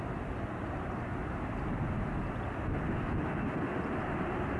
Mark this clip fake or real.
real